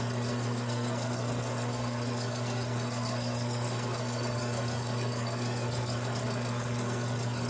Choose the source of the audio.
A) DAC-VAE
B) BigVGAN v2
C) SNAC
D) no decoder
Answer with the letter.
C